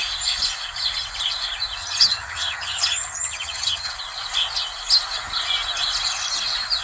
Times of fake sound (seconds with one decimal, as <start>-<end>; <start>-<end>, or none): 1.8-3.9